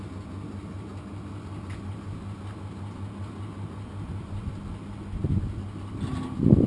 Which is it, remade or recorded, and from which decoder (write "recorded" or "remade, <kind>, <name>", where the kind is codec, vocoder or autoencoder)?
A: recorded